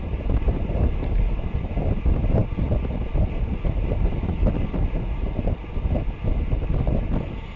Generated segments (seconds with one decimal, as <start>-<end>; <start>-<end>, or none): none